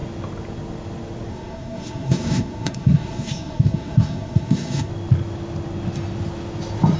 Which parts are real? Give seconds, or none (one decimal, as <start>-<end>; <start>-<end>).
0.0-1.3; 4.9-7.0